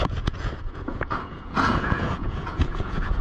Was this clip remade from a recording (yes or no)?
yes